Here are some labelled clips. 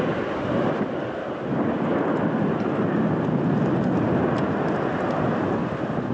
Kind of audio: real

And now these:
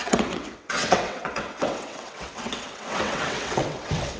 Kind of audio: fake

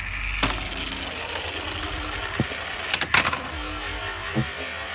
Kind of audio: real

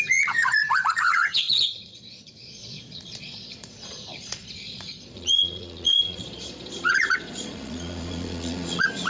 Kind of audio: fake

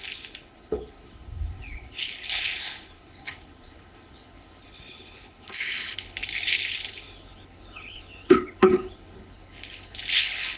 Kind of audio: fake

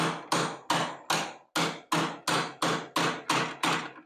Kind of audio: real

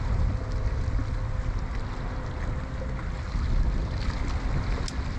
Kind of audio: real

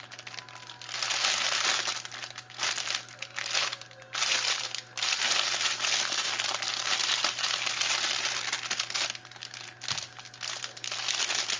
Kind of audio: real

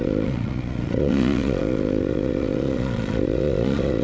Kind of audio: fake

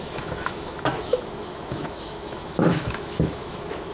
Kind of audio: fake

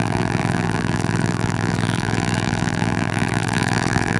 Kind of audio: fake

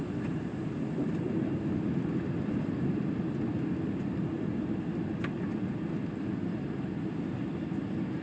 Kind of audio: real